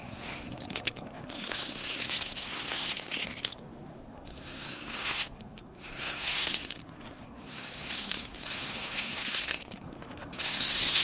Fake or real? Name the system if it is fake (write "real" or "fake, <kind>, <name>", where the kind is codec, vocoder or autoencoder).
fake, codec, SNAC